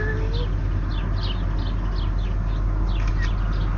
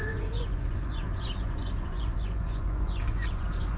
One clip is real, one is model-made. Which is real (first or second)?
first